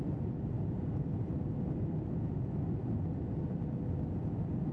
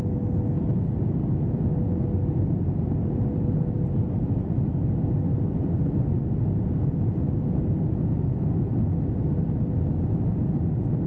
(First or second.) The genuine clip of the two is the second